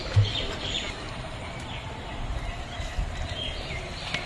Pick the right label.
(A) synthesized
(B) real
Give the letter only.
B